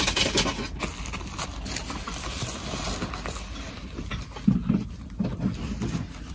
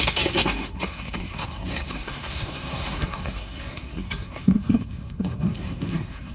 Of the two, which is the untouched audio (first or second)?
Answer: first